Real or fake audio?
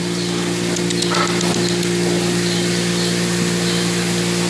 real